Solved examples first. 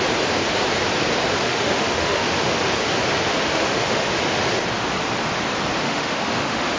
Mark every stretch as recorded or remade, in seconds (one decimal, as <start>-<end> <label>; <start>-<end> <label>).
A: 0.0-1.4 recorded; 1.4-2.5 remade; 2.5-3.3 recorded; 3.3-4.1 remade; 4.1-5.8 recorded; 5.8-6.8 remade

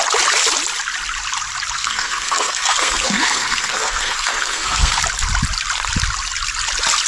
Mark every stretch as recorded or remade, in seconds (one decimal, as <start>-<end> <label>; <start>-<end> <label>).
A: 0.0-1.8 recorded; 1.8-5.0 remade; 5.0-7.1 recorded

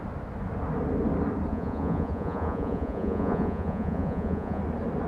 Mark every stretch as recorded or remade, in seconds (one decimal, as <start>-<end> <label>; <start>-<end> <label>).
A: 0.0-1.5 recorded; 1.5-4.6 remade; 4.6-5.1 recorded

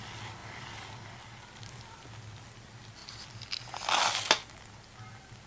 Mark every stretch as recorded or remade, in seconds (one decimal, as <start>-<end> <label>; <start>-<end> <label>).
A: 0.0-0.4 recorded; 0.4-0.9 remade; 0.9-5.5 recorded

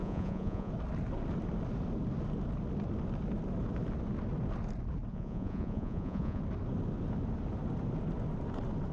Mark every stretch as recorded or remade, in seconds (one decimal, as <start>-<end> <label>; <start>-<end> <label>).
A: 0.0-0.7 remade; 0.7-5.1 recorded; 5.1-6.4 remade; 6.4-8.9 recorded

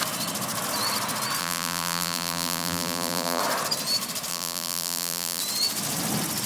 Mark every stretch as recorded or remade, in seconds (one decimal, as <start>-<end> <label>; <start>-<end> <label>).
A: 0.0-1.4 recorded; 1.4-3.4 remade; 3.4-4.3 recorded; 4.3-5.4 remade; 5.4-6.5 recorded

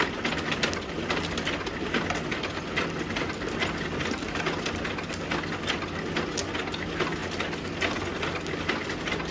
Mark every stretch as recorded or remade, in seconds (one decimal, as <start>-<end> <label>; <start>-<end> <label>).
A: 0.0-9.3 recorded

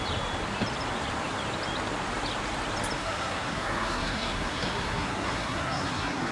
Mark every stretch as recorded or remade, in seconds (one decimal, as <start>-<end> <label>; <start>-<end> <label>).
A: 0.0-3.0 recorded; 3.0-6.3 remade